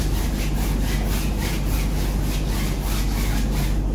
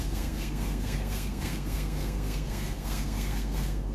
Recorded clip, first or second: first